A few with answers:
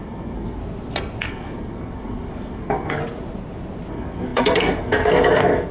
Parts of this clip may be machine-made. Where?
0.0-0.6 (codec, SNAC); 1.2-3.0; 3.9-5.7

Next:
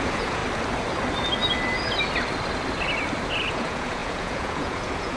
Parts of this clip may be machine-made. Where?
0.0-0.4 (vocoder, Vocos); 3.5-5.2

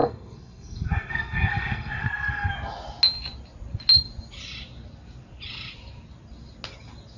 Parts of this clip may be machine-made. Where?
0.0-2.5 (codec, SNAC)

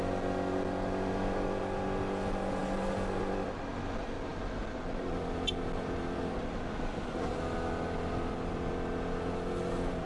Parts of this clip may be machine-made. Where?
none

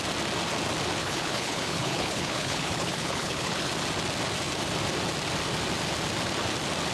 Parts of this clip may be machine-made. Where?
1.0-3.7 (codec, HILCodec)

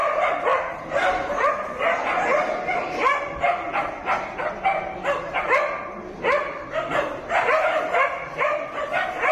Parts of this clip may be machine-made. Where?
none

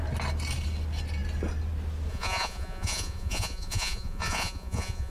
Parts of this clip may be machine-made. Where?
2.1-5.1 (vocoder, Vocos)

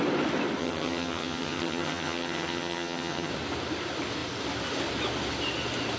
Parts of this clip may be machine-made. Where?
0.6-3.3 (vocoder, HiFi-GAN)